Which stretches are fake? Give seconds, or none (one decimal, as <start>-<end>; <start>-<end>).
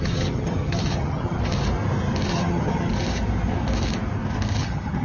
0.0-1.4; 2.3-2.9; 4.6-5.0